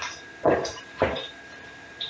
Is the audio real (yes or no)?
no